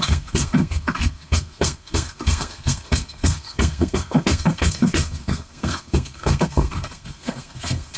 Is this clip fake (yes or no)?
yes